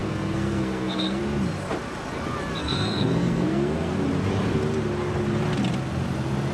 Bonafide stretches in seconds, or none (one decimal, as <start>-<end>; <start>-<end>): 1.2-2.6; 3.9-6.5